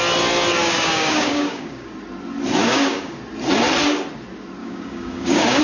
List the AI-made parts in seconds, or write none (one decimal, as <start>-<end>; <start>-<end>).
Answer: 0.6-1.9; 2.6-3.2; 4.6-5.6